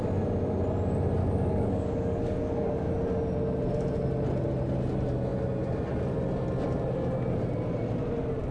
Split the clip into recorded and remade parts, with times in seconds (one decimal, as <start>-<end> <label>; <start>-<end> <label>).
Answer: 0.0-1.2 recorded; 1.2-2.9 remade; 2.9-8.5 recorded